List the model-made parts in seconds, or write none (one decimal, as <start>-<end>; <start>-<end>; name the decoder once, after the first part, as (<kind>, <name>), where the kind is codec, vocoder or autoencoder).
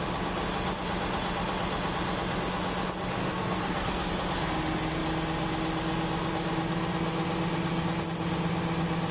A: 3.2-4.1 (codec, SNAC)